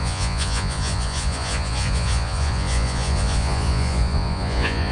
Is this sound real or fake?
fake